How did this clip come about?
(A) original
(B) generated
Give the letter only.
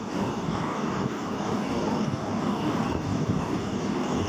B